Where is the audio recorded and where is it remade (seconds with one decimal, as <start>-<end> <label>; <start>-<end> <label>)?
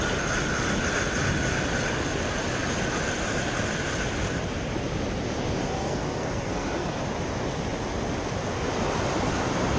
0.0-5.6 recorded; 5.6-7.0 remade; 7.0-9.8 recorded